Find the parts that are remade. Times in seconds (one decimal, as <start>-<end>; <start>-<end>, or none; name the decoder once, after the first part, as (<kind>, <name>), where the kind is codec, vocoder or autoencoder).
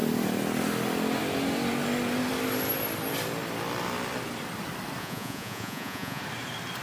5.0-6.2 (vocoder, Vocos)